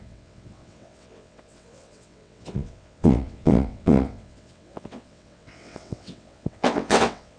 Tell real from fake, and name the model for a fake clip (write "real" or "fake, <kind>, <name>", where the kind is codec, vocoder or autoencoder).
fake, vocoder, WaveNeXt